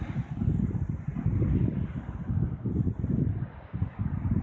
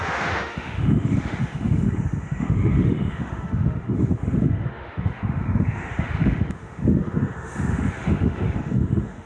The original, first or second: first